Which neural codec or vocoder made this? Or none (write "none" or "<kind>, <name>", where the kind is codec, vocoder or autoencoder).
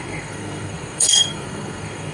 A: codec, SNAC